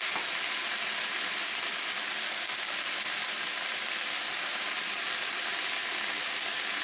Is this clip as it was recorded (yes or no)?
yes